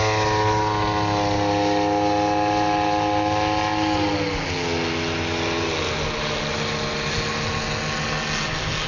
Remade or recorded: recorded